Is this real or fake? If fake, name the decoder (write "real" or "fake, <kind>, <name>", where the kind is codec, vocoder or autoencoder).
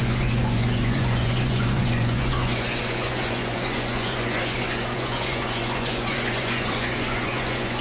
fake, vocoder, Vocos